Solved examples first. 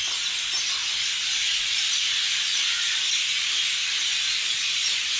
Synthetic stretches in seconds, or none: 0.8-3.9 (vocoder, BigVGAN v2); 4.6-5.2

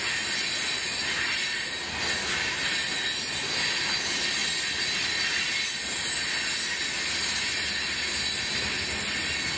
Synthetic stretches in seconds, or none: none